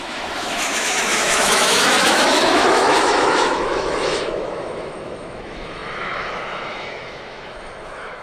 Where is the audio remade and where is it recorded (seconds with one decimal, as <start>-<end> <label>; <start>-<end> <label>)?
0.0-8.2 remade